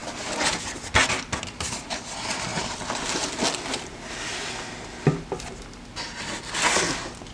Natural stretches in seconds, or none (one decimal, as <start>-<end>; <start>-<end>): 0.0-7.3